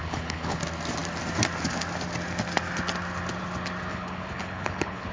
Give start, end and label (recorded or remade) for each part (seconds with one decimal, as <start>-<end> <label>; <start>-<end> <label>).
0.0-0.6 remade; 0.6-3.9 recorded; 3.9-5.1 remade